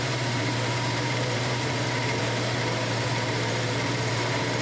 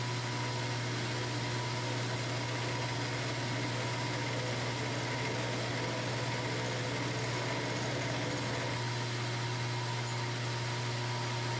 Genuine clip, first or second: second